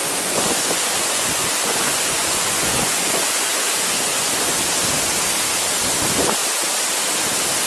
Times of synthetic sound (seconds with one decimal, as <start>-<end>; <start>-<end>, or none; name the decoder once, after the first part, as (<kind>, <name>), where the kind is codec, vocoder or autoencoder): 0.0-4.6 (vocoder, Vocos)